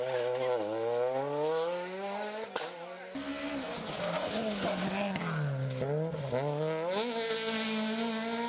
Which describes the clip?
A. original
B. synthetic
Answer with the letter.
A